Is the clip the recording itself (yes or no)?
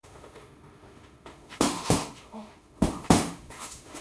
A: no